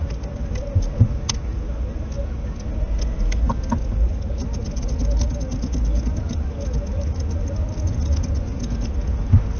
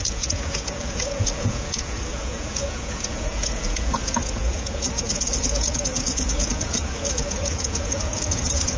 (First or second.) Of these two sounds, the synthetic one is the second